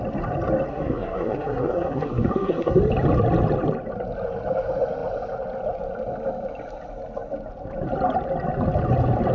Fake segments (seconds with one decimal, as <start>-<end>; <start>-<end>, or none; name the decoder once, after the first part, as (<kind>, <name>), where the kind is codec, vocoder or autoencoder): 0.7-2.8 (codec, SNAC)